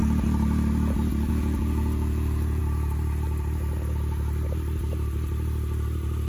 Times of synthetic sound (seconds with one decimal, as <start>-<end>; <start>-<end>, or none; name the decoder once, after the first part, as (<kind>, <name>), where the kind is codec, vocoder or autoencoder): 1.3-2.6 (vocoder, Vocos)